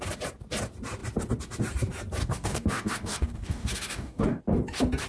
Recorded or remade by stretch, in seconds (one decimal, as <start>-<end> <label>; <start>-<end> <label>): 0.0-2.2 recorded; 2.2-4.4 remade; 4.4-5.1 recorded